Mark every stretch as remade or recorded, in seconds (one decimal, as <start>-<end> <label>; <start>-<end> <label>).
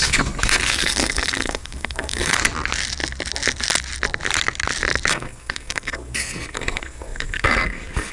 0.0-2.4 remade; 2.4-5.1 recorded; 5.1-8.1 remade